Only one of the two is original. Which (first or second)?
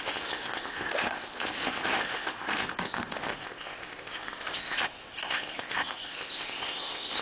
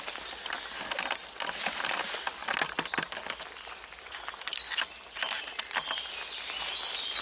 second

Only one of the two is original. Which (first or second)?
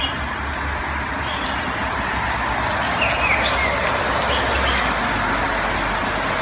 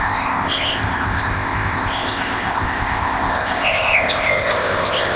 first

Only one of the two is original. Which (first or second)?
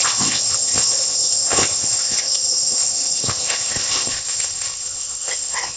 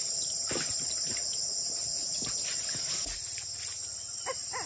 second